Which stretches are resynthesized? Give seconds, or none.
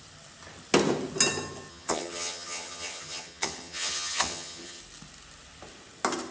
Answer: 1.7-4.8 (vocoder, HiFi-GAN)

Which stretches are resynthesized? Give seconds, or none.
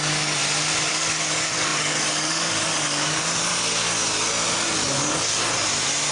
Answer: 0.0-0.4 (codec, DAC); 0.9-3.5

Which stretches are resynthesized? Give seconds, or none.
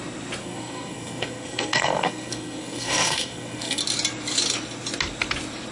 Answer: 0.4-3.8 (codec, SNAC)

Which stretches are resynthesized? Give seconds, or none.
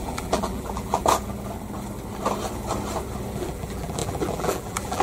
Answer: 0.0-1.0 (vocoder, BigVGAN v2); 3.4-5.0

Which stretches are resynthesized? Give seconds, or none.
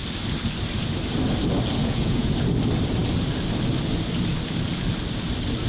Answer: 1.8-2.3 (vocoder, Vocos)